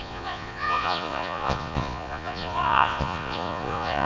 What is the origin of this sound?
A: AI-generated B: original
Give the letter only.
A